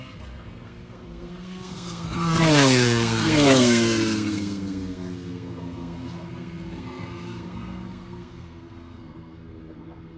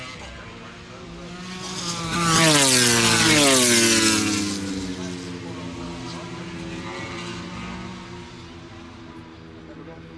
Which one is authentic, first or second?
second